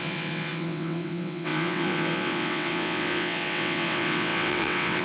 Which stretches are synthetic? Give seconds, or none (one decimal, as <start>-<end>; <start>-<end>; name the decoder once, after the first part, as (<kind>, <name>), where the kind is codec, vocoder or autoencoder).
0.0-5.0 (vocoder, WaveNeXt)